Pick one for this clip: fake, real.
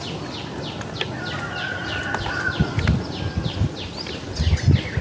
real